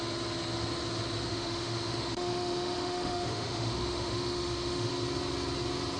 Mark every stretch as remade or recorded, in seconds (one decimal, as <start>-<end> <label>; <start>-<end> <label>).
0.0-1.3 recorded; 1.3-4.9 remade; 4.9-6.0 recorded